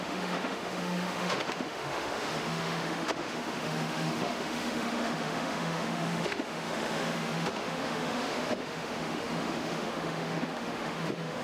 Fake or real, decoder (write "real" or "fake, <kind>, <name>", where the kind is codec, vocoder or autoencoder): fake, autoencoder, DAC-VAE